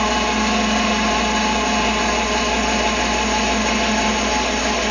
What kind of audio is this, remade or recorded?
recorded